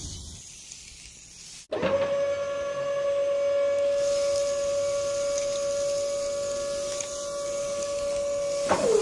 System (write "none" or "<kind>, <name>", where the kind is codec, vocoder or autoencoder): none